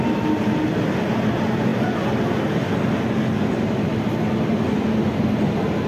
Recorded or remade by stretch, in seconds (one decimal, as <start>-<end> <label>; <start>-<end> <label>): 0.0-5.9 recorded